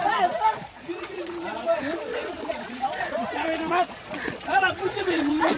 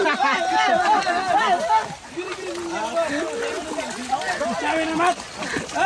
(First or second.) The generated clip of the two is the first